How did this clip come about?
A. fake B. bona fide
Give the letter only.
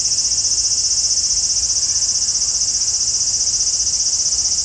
B